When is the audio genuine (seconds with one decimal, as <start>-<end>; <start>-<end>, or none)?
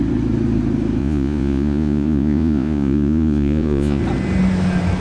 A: 0.0-1.0; 4.0-5.0